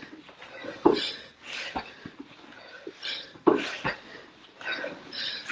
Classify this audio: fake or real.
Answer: fake